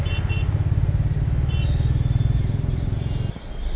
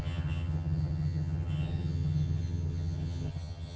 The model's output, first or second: second